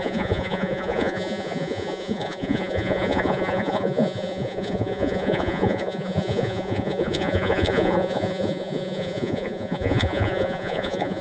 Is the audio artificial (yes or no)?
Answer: yes